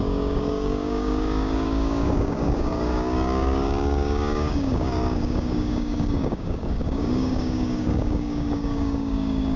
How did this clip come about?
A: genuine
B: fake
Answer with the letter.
B